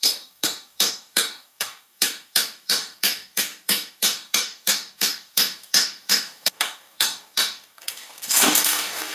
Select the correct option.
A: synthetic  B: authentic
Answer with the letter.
A